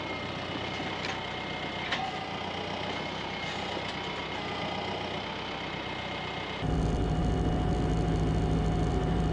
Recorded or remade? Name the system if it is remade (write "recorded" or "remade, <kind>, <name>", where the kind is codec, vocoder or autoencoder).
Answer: recorded